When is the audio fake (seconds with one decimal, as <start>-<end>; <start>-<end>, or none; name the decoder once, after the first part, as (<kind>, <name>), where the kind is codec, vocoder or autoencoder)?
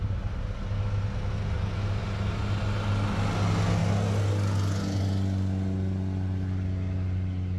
none